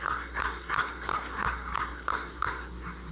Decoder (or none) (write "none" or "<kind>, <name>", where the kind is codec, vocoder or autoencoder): codec, SNAC